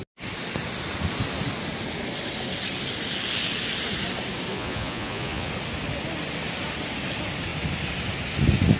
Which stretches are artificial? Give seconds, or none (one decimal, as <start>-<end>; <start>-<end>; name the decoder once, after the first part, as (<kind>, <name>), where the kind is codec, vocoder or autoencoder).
4.5-5.5 (vocoder, Vocos)